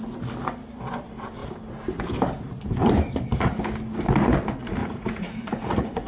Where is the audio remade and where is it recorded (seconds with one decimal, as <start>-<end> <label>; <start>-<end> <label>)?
0.0-4.8 recorded; 4.8-6.1 remade